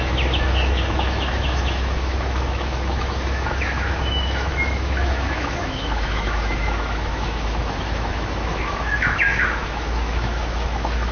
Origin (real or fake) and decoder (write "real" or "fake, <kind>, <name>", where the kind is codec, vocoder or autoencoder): fake, autoencoder, DAC-VAE